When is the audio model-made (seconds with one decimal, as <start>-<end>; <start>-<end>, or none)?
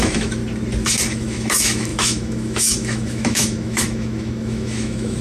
0.0-0.4; 1.1-5.2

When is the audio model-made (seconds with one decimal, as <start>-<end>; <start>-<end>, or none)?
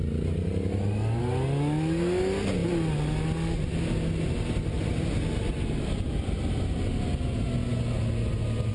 none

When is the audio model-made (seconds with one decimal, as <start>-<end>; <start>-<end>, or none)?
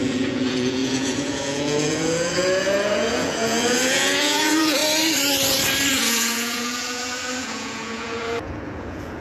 0.0-4.8; 5.9-9.2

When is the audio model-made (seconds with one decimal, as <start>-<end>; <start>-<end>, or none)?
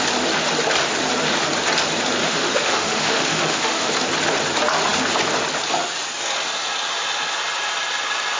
2.2-3.9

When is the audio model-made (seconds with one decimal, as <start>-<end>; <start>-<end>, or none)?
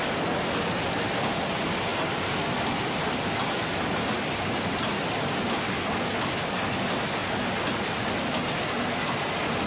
none